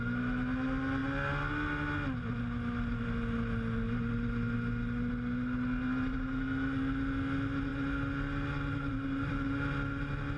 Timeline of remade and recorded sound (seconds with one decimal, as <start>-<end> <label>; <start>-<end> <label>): 0.0-10.4 recorded